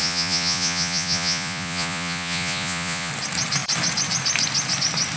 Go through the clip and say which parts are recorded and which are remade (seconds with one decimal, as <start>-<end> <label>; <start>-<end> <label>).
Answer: 0.0-3.1 remade; 3.1-5.2 recorded